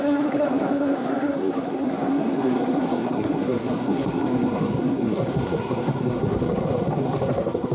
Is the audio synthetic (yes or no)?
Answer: yes